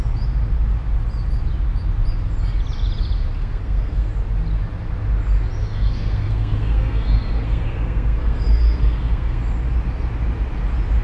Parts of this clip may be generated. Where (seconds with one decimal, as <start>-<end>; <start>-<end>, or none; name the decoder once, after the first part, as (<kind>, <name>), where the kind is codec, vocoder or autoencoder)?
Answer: 3.4-4.1 (codec, SNAC); 5.6-9.4